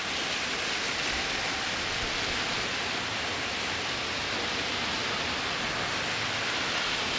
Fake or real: real